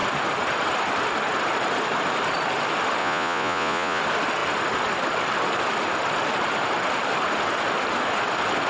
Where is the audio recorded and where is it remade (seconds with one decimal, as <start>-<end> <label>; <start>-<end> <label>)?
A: 0.0-3.0 recorded; 3.0-4.0 remade; 4.0-8.7 recorded